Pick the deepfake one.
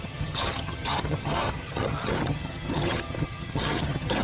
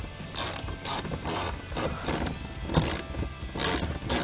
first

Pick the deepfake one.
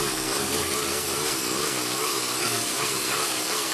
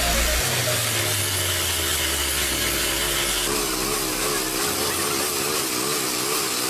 first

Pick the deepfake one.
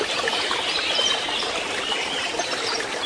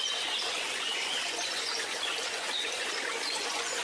second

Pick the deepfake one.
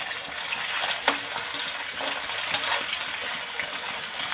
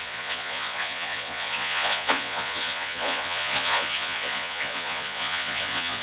second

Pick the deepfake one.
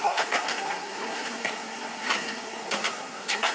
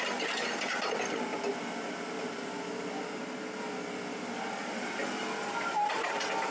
first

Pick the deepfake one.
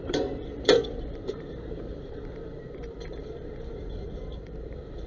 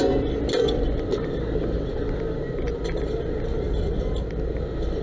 first